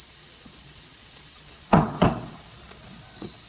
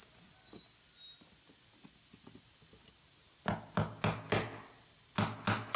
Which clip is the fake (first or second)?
first